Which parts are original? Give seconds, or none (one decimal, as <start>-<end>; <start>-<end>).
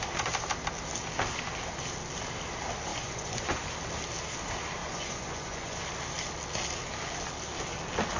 0.0-2.9; 3.7-4.8; 5.8-8.2